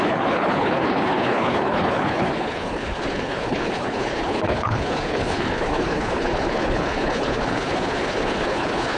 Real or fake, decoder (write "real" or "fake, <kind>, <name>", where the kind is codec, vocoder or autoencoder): fake, codec, HILCodec